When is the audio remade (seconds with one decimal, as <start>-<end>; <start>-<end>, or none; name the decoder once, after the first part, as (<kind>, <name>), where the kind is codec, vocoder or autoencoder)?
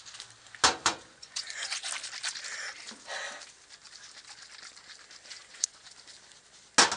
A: 0.8-1.9 (vocoder, Vocos); 5.4-5.9